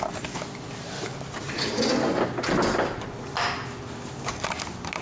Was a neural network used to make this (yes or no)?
no